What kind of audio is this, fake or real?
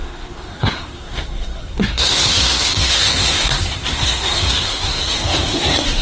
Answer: fake